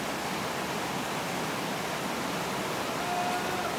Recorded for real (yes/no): yes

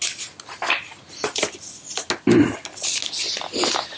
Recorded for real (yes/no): yes